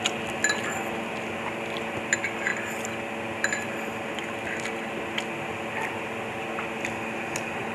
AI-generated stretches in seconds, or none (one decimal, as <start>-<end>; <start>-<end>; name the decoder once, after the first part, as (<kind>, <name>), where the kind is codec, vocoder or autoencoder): none